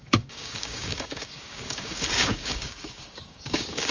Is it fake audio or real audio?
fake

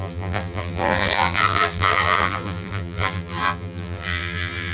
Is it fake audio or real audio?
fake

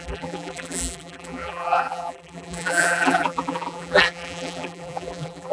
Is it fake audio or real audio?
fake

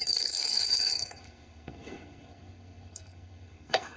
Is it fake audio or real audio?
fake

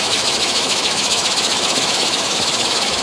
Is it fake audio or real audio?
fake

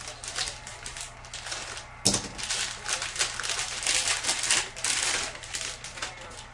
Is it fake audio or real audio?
real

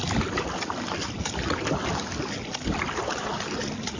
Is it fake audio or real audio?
real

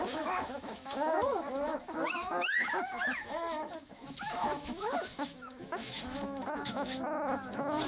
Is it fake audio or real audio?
fake